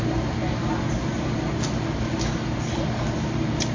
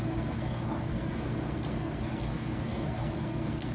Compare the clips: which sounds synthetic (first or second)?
second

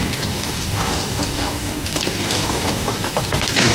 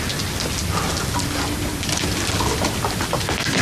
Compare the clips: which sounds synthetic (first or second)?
first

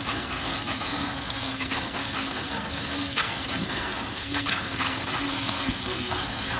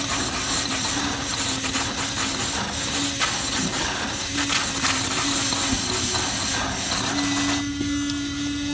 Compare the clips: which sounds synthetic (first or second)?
first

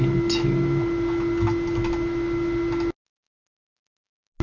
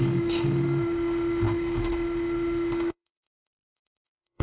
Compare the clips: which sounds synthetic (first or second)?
second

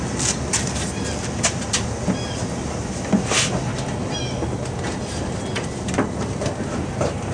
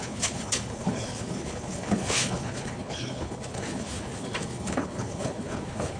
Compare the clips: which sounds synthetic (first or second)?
second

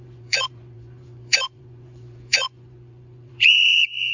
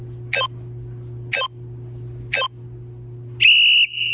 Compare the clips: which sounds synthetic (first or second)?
first